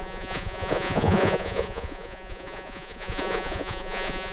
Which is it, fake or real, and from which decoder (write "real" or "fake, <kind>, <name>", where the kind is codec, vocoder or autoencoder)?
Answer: fake, vocoder, Vocos